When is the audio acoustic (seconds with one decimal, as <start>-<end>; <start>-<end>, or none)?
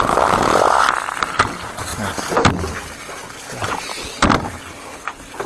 0.0-5.5